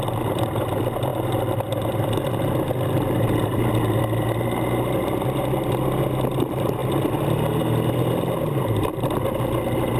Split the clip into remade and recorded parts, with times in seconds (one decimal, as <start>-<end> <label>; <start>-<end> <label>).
0.0-10.0 recorded